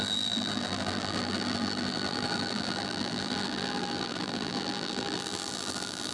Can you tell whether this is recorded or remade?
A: remade